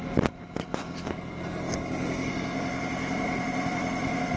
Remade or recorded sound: recorded